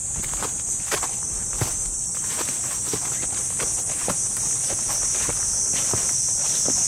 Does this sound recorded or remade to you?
recorded